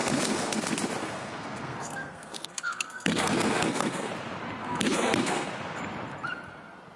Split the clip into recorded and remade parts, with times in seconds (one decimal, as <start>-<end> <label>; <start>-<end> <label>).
0.0-0.6 remade; 0.6-1.0 recorded; 1.0-4.1 remade; 4.1-4.6 recorded; 4.6-5.5 remade; 5.5-7.0 recorded